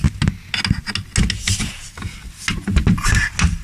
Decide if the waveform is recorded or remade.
recorded